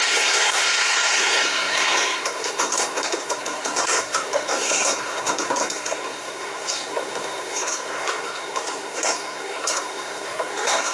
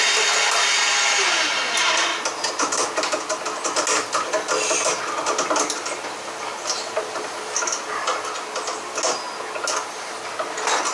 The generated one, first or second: first